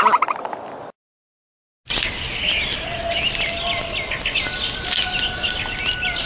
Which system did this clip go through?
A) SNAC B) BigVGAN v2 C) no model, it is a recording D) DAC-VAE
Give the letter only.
C